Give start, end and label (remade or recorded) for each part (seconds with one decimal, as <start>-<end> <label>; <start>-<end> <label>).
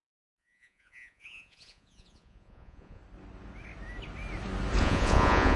0.0-3.0 remade; 3.0-4.8 recorded; 4.8-5.6 remade